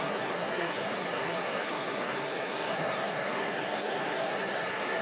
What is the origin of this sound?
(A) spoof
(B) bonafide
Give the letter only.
A